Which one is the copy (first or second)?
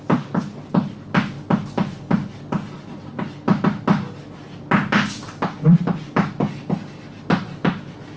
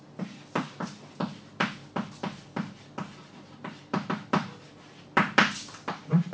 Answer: second